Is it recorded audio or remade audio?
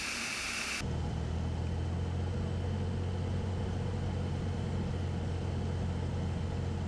recorded